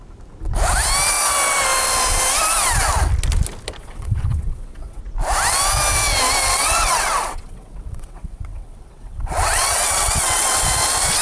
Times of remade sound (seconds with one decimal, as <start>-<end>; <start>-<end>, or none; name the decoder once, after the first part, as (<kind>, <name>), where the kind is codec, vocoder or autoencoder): 3.8-5.0 (vocoder, WaveNeXt); 6.4-10.6